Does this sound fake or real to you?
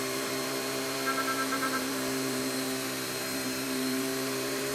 fake